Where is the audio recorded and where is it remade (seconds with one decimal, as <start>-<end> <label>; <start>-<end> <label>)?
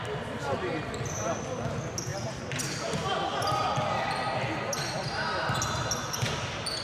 0.0-6.8 recorded